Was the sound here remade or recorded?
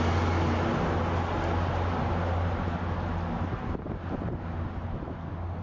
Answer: recorded